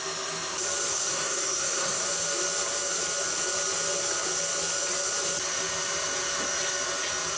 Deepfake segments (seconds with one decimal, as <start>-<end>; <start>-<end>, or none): 0.9-2.0